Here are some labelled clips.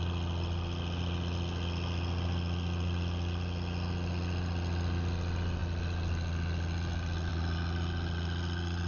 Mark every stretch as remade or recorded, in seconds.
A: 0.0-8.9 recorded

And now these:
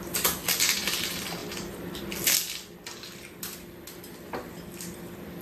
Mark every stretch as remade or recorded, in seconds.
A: 0.0-5.4 recorded

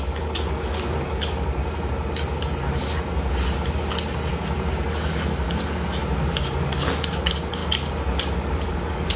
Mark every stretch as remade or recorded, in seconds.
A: 0.0-1.6 remade; 1.6-6.4 recorded; 6.4-7.6 remade; 7.6-8.3 recorded; 8.3-9.2 remade

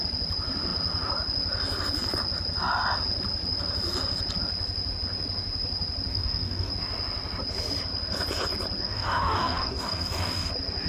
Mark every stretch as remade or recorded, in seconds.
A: 0.0-6.1 recorded; 6.1-6.7 remade; 6.7-8.8 recorded; 8.8-10.5 remade; 10.5-10.9 recorded